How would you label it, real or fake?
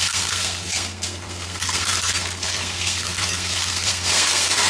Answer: fake